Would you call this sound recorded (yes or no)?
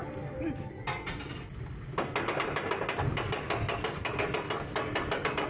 yes